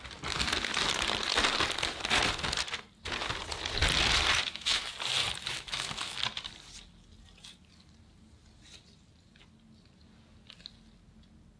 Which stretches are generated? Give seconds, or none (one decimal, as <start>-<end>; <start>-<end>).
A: 4.4-4.9; 5.5-6.2